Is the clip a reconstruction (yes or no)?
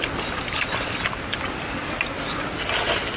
no